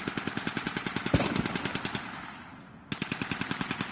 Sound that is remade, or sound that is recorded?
recorded